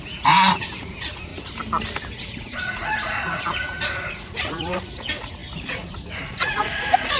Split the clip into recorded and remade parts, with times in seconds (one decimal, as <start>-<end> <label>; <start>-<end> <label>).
0.0-1.3 remade; 1.3-2.1 recorded; 2.1-7.2 remade